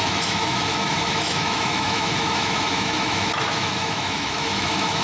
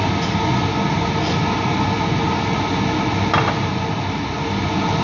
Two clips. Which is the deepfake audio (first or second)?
first